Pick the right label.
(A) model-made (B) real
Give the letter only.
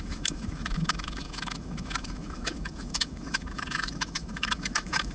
A